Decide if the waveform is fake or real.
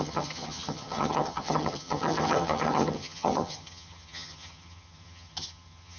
fake